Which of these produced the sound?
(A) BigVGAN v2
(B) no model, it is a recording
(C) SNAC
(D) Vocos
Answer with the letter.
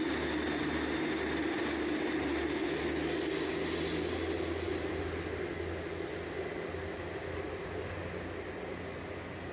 B